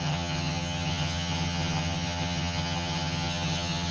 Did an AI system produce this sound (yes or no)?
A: yes